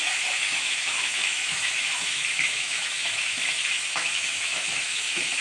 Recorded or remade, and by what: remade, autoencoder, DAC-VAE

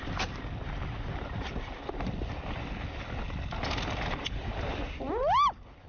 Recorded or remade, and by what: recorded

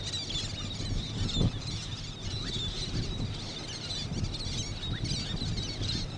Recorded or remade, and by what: recorded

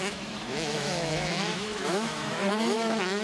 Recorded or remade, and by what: remade, autoencoder, DAC-VAE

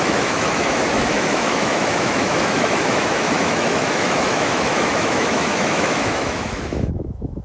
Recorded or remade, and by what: remade, autoencoder, DAC-VAE